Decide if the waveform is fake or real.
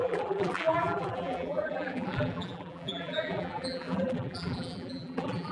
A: fake